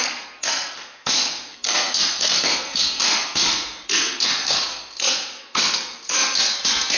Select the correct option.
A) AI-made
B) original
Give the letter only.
A